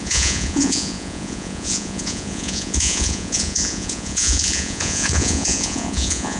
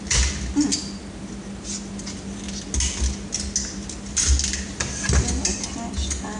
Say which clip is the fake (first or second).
first